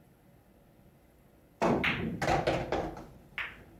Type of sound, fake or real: real